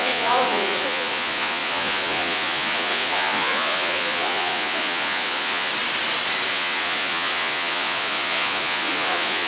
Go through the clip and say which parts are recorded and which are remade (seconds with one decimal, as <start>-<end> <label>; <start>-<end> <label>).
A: 0.0-5.7 remade; 5.7-6.5 recorded; 6.5-9.5 remade